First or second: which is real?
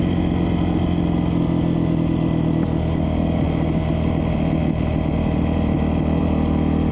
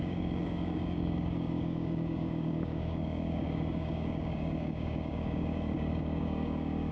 first